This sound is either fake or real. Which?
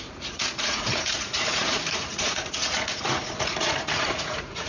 fake